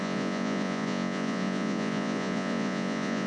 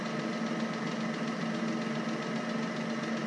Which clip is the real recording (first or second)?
second